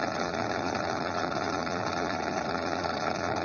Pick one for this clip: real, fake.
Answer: fake